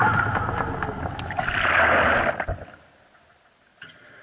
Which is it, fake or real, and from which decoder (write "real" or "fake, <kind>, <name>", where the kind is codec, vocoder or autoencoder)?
real